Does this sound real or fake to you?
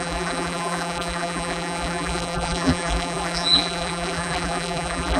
fake